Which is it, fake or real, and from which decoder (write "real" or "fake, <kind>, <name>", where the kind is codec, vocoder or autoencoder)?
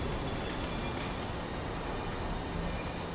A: real